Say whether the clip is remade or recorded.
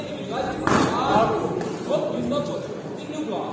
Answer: recorded